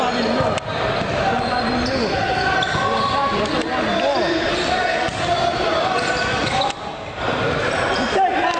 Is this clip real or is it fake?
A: real